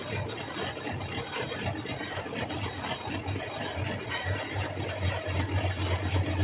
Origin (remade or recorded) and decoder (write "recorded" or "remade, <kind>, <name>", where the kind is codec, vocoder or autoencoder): recorded